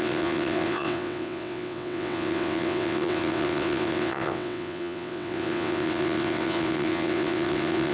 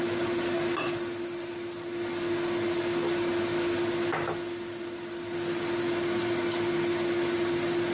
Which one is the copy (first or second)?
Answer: first